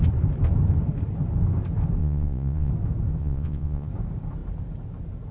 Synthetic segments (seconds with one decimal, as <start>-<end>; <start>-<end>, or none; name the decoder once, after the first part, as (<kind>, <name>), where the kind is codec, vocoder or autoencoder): 2.0-2.7 (vocoder, Vocos); 3.2-3.9

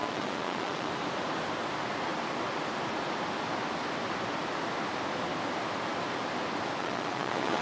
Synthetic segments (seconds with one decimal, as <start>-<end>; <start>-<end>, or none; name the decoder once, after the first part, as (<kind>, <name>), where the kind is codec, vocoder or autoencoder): 0.0-0.9 (vocoder, Vocos); 6.8-7.6